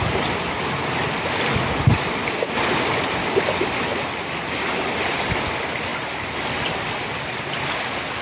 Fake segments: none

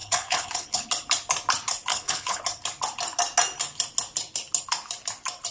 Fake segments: 0.0-0.9 (codec, HILCodec); 1.9-2.4

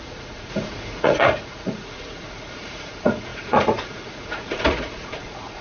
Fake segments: 0.0-5.6 (vocoder, Vocos)

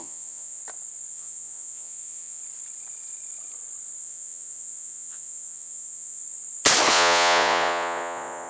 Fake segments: 0.0-0.6 (vocoder, Vocos); 1.1-2.4; 4.0-6.2; 6.9-8.5

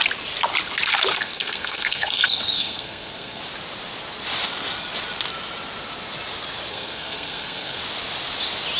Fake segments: 1.1-3.4 (codec, SNAC); 6.7-7.8

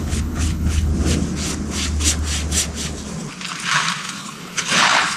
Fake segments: 0.0-0.9 (codec, HILCodec); 4.0-5.2

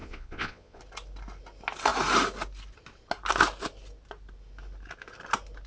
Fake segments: 0.0-0.8 (vocoder, Vocos)

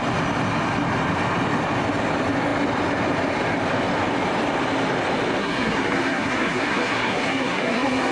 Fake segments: 5.4-8.1 (codec, SNAC)